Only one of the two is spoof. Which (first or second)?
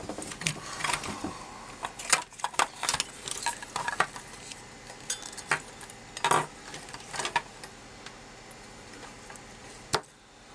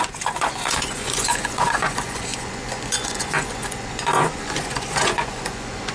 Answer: second